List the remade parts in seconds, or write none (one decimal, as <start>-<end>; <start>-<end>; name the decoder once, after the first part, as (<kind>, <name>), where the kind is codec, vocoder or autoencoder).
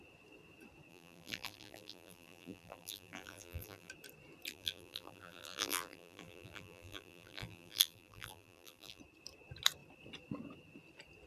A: 0.9-3.9 (vocoder, BigVGAN v2); 4.5-9.0